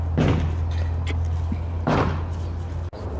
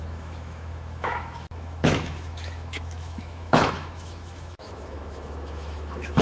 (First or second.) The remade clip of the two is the second